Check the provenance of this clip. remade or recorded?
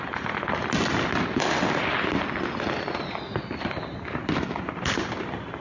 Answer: recorded